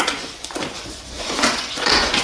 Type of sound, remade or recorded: remade